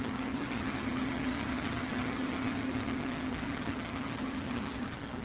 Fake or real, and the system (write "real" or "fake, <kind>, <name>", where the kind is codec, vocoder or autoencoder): fake, vocoder, HiFi-GAN